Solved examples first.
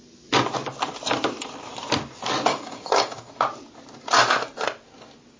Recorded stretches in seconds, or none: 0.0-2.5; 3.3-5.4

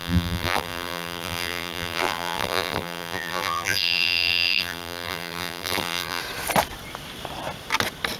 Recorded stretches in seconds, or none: 6.2-8.2

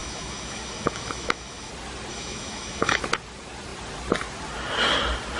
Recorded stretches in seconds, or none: 1.7-2.1; 3.0-5.4

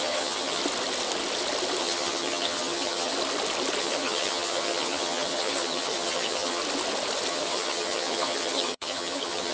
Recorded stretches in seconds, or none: 0.6-1.8; 3.1-3.8; 6.6-7.3

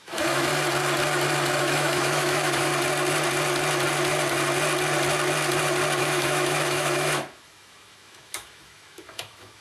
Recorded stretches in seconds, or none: 0.5-1.6; 2.7-6.0

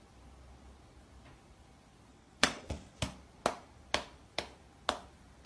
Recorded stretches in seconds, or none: 0.0-2.1; 3.0-5.5

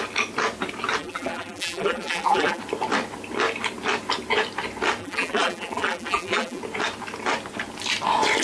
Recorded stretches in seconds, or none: 0.0-1.0; 2.6-5.0; 6.6-8.4

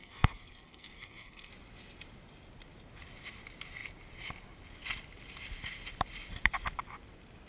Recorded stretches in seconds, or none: 1.5-7.5